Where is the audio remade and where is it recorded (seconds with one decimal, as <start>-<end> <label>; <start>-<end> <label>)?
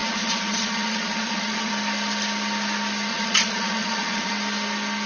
0.0-1.7 remade; 1.7-3.1 recorded; 3.1-4.3 remade; 4.3-5.1 recorded